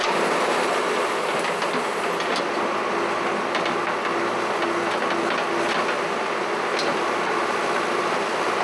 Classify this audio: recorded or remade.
recorded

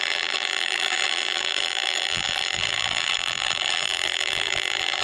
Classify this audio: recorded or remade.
remade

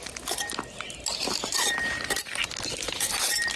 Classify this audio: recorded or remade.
remade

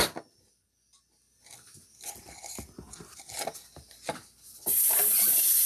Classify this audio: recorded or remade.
recorded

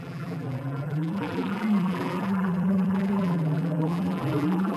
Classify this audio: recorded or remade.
remade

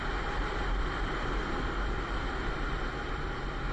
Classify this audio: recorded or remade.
remade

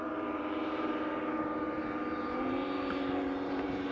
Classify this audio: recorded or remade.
remade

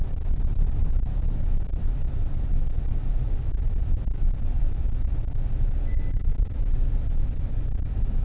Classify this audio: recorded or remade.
remade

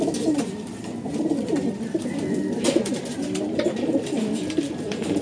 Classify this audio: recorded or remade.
remade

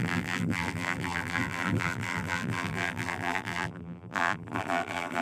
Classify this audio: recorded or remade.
remade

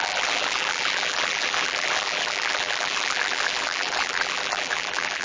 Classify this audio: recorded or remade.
remade